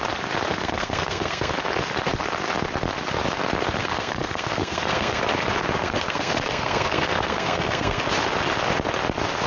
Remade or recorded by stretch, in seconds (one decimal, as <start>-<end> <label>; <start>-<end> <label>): 0.0-0.5 recorded; 0.5-1.5 remade; 1.5-3.8 recorded; 3.8-5.2 remade; 5.2-5.8 recorded; 5.8-8.0 remade; 8.0-9.5 recorded